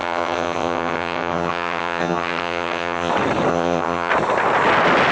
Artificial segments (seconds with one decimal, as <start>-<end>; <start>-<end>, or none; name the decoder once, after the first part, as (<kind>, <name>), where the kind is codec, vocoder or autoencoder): 0.0-3.1 (vocoder, HiFi-GAN); 3.5-4.1

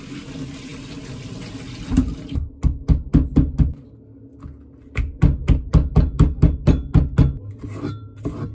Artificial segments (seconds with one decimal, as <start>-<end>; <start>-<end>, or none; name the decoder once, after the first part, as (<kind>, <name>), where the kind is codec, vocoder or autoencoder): none

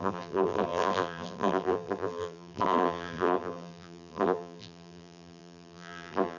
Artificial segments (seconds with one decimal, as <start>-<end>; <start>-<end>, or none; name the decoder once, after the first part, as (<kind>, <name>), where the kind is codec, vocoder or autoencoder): 0.0-6.4 (vocoder, BigVGAN v2)

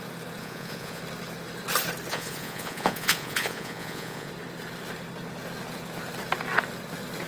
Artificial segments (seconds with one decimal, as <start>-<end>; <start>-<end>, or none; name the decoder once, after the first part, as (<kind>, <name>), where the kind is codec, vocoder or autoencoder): 0.4-1.0 (vocoder, Vocos); 2.1-4.3